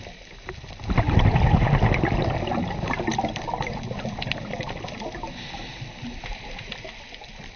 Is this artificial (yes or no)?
no